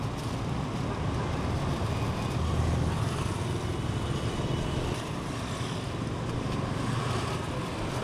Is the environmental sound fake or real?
real